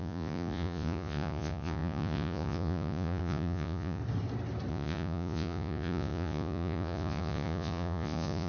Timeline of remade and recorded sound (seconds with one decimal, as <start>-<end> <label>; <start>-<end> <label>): 0.0-4.0 remade; 4.0-4.7 recorded; 4.7-8.5 remade